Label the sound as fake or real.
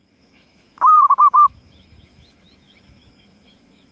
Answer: fake